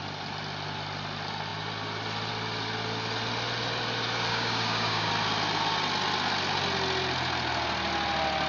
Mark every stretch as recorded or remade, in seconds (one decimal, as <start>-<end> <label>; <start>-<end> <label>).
0.0-4.3 recorded; 4.3-5.1 remade; 5.1-8.5 recorded